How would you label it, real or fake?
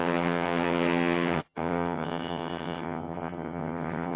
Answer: fake